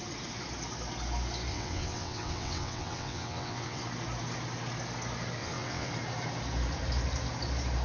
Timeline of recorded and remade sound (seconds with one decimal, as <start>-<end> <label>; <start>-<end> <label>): 0.0-1.5 recorded; 1.5-3.8 remade; 3.8-5.4 recorded; 5.4-5.9 remade; 5.9-7.8 recorded